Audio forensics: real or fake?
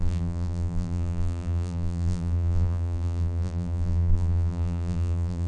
fake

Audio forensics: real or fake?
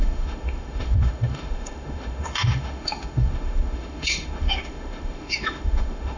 fake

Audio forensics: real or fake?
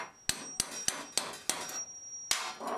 real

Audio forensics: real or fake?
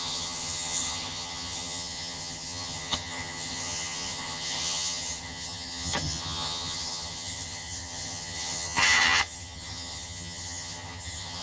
fake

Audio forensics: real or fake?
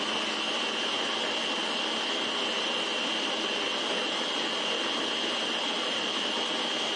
real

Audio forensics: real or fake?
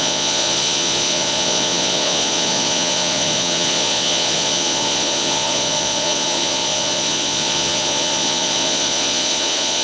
fake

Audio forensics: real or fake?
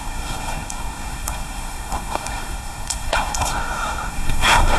fake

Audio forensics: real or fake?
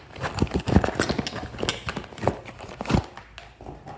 real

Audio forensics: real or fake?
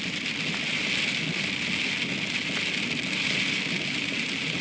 real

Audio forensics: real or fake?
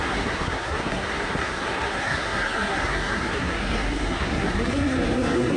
fake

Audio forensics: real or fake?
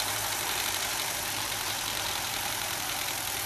fake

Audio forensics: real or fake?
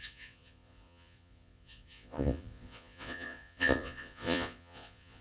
fake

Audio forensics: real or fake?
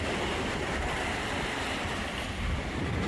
real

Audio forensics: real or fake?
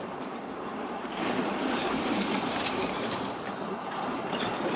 fake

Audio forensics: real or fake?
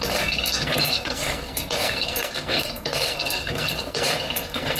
fake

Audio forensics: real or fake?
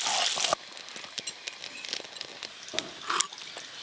real